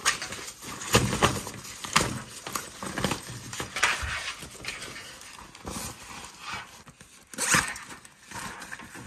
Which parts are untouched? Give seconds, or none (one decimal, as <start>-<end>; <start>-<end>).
0.0-9.1